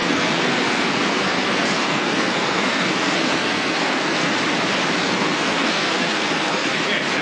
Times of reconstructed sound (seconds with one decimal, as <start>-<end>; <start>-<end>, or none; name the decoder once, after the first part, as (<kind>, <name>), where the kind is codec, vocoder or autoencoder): 0.0-4.3 (codec, SNAC); 5.0-6.8